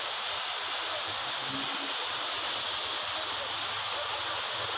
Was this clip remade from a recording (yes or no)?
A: no